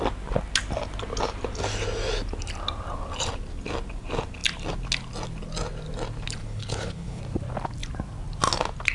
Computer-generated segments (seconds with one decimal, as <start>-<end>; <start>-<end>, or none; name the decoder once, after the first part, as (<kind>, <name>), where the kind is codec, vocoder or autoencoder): 6.4-7.2 (codec, HILCodec)